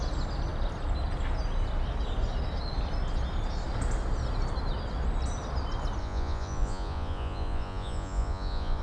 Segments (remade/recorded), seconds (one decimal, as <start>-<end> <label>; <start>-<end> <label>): 0.0-6.0 recorded; 6.0-8.8 remade